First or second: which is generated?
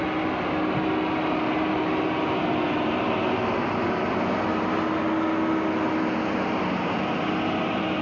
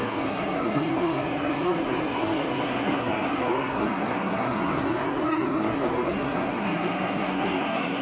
second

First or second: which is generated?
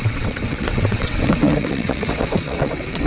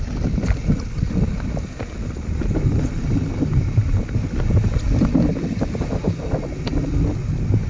first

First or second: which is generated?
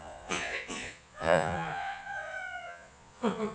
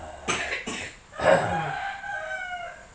first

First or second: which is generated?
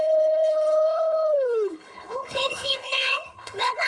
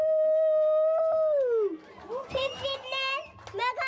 first